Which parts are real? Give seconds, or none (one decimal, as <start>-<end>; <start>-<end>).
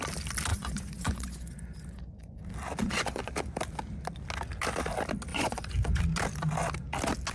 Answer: 0.0-0.5; 2.4-2.8; 3.3-5.3; 6.0-7.3